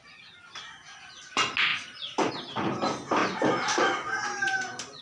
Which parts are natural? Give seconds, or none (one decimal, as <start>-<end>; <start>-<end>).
0.0-5.0